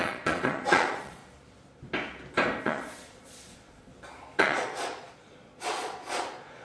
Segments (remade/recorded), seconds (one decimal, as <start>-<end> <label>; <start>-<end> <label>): 0.0-1.2 remade; 1.2-2.6 recorded; 2.6-3.9 remade; 3.9-4.4 recorded; 4.4-6.6 remade